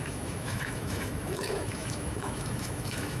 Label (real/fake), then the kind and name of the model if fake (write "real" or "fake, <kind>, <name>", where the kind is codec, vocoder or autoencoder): fake, autoencoder, DAC-VAE